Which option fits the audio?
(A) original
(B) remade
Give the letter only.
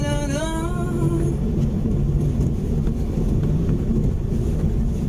A